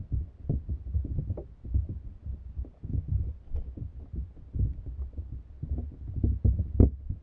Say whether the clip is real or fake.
real